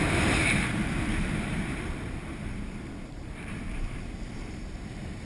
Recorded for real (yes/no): no